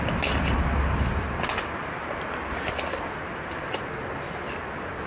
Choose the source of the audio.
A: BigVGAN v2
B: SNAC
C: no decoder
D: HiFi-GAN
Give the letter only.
C